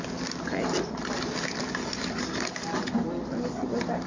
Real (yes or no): yes